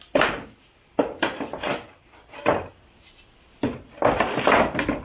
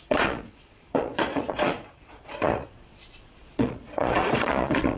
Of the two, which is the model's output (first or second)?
second